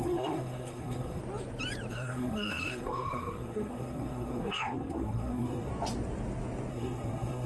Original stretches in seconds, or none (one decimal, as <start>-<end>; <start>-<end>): 1.2-1.9; 5.7-6.7